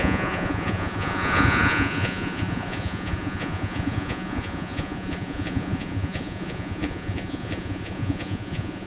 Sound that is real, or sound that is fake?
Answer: fake